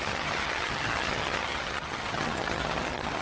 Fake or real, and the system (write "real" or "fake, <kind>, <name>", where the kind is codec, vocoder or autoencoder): fake, vocoder, HiFi-GAN